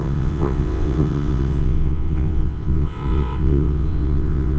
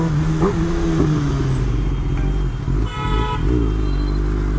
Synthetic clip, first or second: first